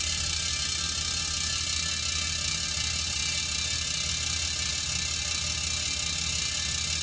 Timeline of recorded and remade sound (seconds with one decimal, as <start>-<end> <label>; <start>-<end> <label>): 0.0-7.0 recorded